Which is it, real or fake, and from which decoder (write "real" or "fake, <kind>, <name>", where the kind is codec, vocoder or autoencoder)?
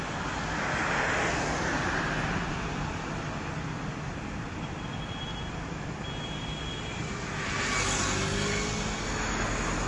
real